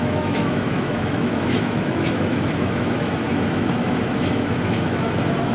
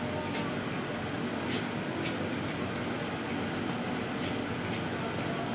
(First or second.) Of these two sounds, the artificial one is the first